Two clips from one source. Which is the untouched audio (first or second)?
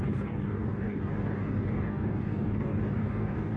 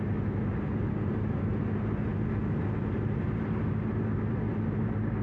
second